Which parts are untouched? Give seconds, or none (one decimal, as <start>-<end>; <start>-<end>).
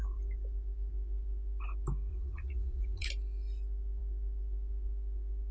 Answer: 0.0-2.1; 3.1-5.5